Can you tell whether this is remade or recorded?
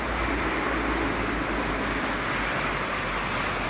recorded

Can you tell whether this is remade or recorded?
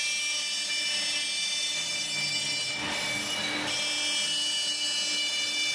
recorded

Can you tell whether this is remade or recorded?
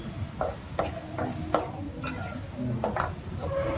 recorded